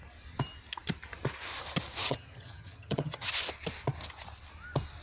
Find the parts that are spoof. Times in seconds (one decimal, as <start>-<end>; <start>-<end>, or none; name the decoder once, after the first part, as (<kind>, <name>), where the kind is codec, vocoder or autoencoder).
2.0-3.3 (vocoder, HiFi-GAN)